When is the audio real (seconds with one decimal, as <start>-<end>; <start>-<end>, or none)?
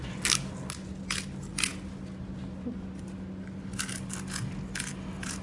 0.0-5.4